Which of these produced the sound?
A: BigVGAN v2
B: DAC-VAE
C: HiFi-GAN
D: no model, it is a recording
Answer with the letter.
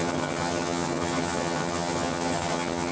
C